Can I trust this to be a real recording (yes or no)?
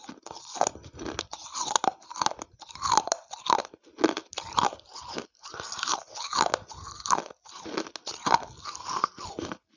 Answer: yes